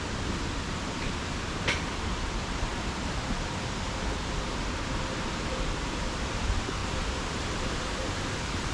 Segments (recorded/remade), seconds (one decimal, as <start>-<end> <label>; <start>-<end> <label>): 0.0-2.7 remade; 2.7-6.3 recorded; 6.3-8.7 remade